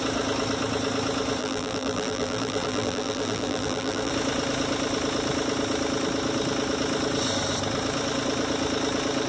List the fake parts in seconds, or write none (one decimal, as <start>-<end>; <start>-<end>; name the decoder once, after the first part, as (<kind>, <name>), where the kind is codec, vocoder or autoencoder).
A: 1.4-4.1 (vocoder, BigVGAN v2)